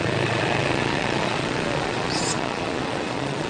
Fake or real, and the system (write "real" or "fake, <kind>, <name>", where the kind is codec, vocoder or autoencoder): fake, vocoder, Vocos